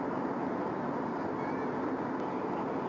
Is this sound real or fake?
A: real